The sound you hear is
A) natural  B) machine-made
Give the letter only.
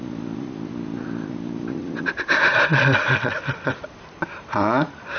A